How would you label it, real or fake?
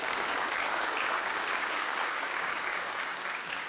fake